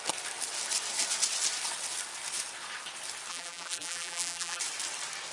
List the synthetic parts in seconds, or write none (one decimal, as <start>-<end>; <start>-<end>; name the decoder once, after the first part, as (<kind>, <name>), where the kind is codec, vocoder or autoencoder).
3.3-4.6 (vocoder, BigVGAN v2)

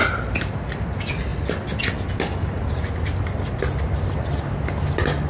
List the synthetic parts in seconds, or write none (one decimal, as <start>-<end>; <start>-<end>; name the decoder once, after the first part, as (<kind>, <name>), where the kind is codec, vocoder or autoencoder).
none